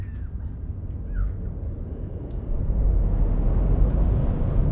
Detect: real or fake real